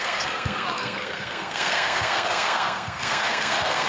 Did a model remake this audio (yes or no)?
yes